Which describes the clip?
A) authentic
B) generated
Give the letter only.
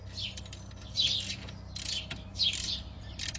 A